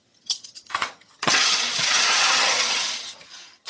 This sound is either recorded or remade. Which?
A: remade